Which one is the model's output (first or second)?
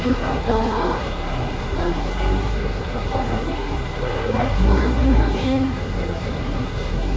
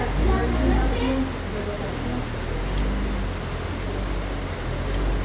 first